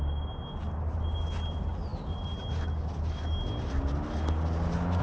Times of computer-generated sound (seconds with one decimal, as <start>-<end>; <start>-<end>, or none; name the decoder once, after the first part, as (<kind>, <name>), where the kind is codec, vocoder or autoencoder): none

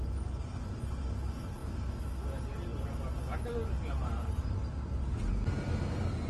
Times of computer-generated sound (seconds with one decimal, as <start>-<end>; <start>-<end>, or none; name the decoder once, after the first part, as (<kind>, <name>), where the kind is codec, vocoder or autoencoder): 1.6-2.2 (autoencoder, DAC-VAE)

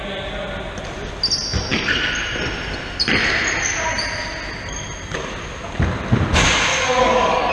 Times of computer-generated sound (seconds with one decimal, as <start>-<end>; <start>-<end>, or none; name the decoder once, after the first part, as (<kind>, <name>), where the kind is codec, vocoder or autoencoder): 6.7-7.5 (codec, DAC)

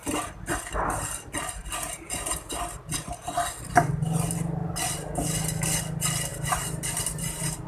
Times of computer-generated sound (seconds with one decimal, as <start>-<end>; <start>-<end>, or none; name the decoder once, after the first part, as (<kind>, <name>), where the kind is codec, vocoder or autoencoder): 6.3-7.7 (vocoder, BigVGAN v2)